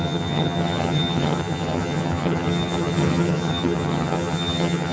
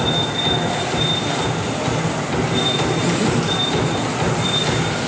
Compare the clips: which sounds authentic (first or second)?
second